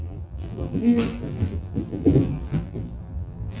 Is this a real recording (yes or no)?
no